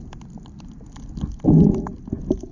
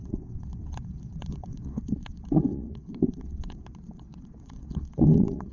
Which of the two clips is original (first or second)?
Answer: first